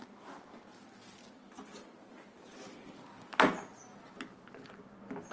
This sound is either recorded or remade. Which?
recorded